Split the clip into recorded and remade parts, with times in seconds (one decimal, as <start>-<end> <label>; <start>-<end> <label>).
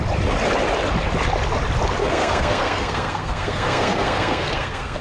0.0-2.0 recorded; 2.0-5.0 remade